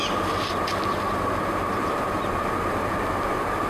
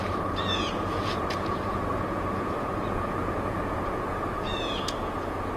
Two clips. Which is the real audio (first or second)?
first